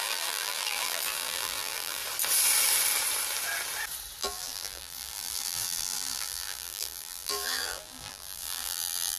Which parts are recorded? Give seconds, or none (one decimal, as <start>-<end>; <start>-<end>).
2.0-4.2